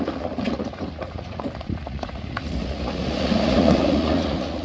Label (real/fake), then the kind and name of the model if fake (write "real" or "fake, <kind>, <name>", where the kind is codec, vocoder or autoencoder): fake, vocoder, Vocos